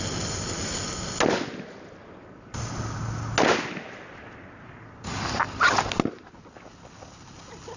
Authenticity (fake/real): real